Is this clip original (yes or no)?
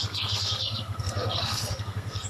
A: no